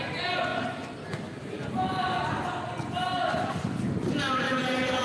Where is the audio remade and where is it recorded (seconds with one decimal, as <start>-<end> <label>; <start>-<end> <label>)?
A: 0.0-5.0 recorded